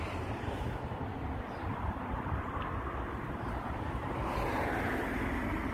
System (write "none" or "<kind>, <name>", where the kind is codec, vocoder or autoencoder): none